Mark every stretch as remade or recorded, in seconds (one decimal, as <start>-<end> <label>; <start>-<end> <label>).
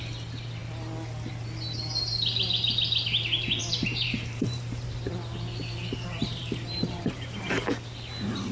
0.0-3.6 recorded; 3.6-5.1 remade; 5.1-6.2 recorded; 6.2-7.5 remade; 7.5-8.5 recorded